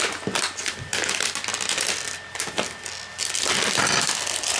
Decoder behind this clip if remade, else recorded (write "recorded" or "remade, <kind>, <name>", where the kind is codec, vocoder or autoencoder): recorded